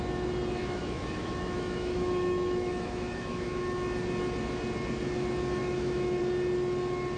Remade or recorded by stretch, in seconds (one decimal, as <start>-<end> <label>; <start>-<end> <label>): 0.0-0.6 recorded; 0.6-3.6 remade; 3.6-5.6 recorded; 5.6-6.2 remade; 6.2-7.2 recorded